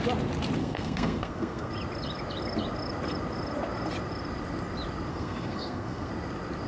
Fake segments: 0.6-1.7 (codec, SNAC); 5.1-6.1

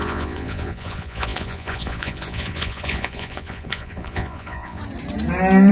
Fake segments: 0.0-4.8 (vocoder, Vocos)

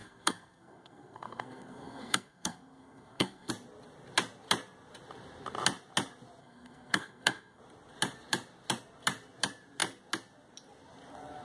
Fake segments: 0.0-3.5 (codec, SNAC); 6.4-7.6

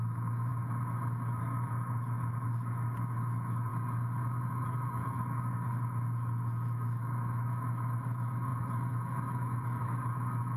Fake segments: 0.0-0.5 (autoencoder, DAC-VAE); 1.4-3.7; 4.5-10.6

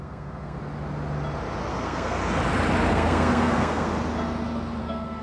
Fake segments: 0.0-0.6 (codec, SNAC); 1.7-2.2; 2.9-3.9; 4.8-5.2

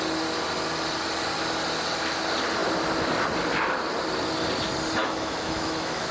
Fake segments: 5.0-6.1 (autoencoder, DAC-VAE)

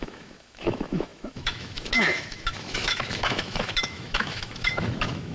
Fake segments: 0.0-5.3 (autoencoder, DAC-VAE)

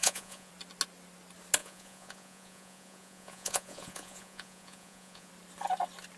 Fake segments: 0.0-0.5 (vocoder, Vocos); 1.6-5.3